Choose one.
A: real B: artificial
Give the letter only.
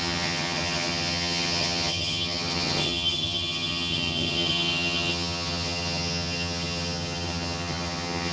B